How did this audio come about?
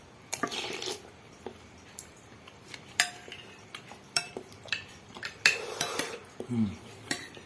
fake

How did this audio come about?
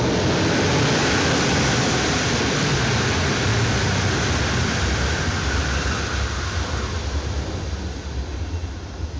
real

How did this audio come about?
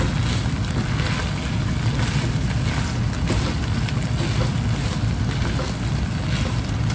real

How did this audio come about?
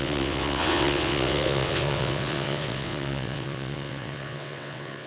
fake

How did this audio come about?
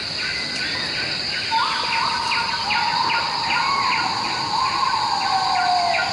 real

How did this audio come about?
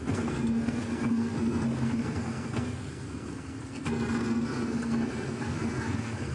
fake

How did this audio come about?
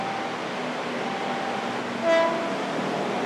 real